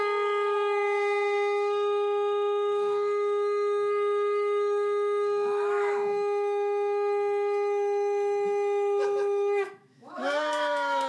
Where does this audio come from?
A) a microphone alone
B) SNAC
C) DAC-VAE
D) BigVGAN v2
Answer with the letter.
C